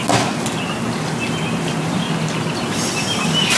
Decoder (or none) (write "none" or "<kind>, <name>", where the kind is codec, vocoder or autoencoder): none